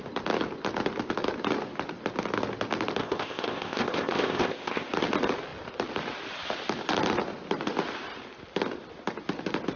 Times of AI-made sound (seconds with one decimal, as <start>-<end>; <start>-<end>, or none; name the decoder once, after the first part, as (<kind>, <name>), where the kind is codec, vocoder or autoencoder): 3.0-4.9 (codec, ZipCodec)